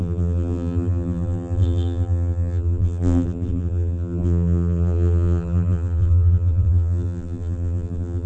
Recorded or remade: remade